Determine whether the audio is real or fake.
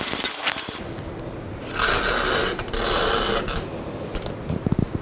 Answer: real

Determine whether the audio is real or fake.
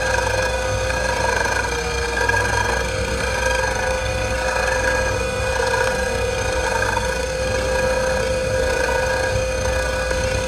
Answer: fake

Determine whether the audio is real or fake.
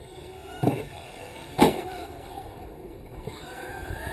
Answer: fake